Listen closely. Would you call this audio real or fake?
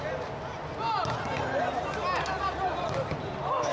real